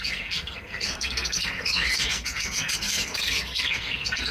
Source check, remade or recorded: remade